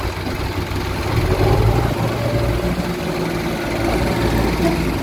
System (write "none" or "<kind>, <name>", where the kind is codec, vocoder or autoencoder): none